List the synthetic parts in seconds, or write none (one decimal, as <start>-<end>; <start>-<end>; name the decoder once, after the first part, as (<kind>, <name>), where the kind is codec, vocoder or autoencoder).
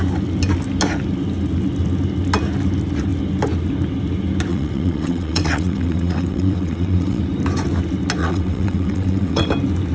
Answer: 4.5-7.2 (vocoder, WaveNeXt); 8.2-9.5